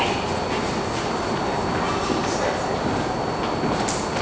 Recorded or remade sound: recorded